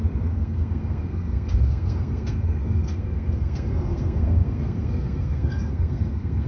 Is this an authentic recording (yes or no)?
no